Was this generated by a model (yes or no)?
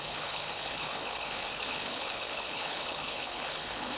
yes